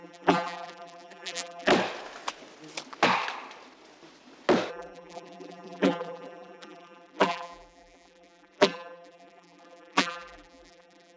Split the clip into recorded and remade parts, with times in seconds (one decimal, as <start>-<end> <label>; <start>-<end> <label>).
0.0-1.7 remade; 1.7-4.7 recorded; 4.7-11.2 remade